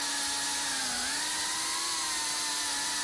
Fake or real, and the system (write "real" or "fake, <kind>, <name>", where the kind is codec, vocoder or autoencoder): real